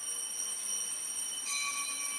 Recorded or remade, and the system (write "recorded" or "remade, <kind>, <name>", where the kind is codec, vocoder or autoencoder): recorded